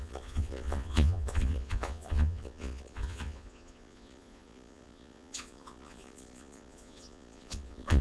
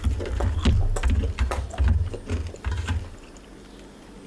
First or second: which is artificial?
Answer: first